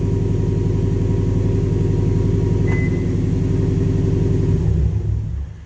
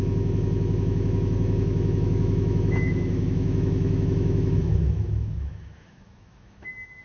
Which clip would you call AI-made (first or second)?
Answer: second